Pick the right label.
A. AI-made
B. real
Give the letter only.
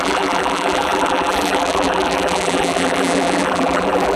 A